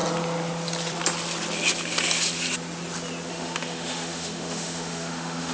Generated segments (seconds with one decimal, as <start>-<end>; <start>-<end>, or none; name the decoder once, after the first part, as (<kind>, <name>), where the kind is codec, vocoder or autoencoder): 3.3-5.5 (autoencoder, DAC-VAE)